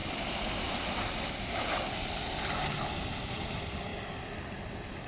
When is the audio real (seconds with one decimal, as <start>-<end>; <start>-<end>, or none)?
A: 0.0-5.1